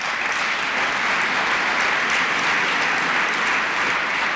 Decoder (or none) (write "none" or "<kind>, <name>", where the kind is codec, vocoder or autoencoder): none